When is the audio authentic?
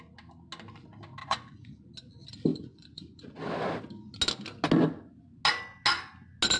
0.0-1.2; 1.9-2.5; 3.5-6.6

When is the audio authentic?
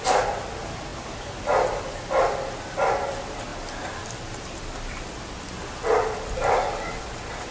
0.0-7.5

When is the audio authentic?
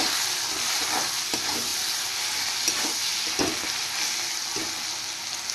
0.0-5.5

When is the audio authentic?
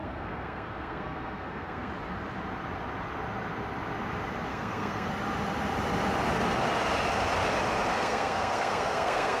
1.9-4.5; 5.1-7.9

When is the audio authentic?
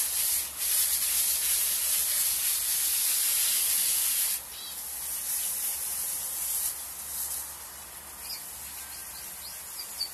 0.0-10.1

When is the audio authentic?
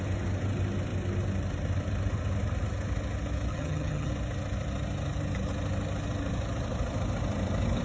0.0-3.5; 4.1-7.8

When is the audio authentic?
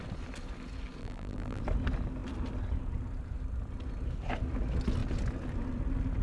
0.0-1.0; 1.6-6.2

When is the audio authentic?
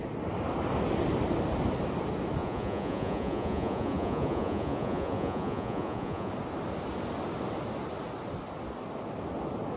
0.0-2.4; 6.3-9.8